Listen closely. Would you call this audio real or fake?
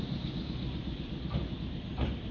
real